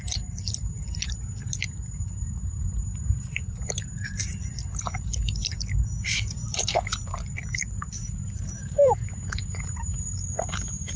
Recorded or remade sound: remade